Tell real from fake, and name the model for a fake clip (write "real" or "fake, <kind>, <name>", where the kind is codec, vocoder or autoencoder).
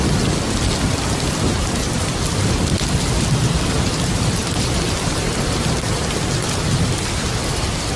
real